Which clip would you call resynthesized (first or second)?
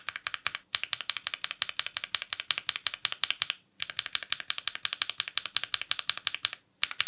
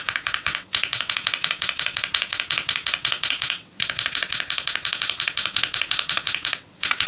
second